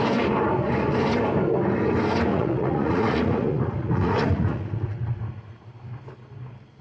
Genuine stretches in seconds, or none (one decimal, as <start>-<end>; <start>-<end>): 0.0-2.3; 5.7-6.8